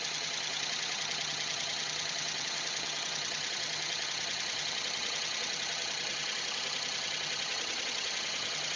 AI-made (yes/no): yes